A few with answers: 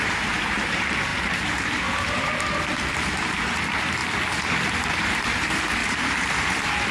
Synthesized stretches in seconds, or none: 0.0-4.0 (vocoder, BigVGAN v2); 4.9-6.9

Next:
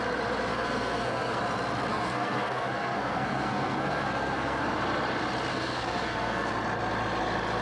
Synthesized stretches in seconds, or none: 0.5-1.4 (codec, SNAC); 1.9-4.6; 5.5-6.5

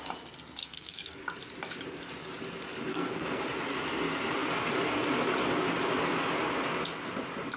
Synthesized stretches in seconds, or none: 0.6-1.2 (codec, SNAC); 2.9-3.4